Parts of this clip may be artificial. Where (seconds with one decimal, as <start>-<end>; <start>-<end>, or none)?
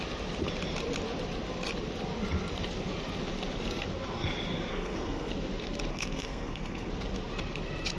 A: 4.7-5.3; 5.9-6.9